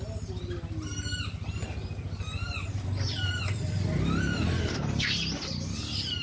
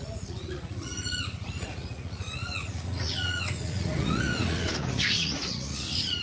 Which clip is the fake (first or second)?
second